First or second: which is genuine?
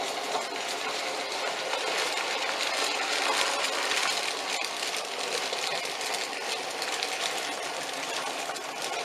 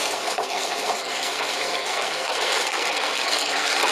first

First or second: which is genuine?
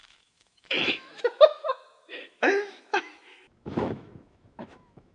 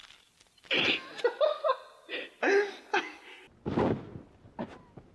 second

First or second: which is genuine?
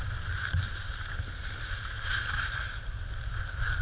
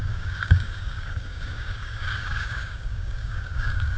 first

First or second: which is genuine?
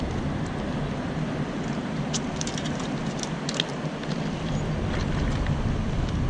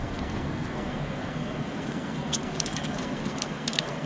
first